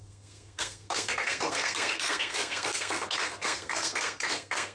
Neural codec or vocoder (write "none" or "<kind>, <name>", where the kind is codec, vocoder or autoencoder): codec, SNAC